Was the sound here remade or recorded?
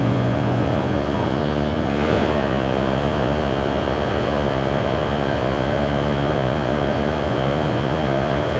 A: remade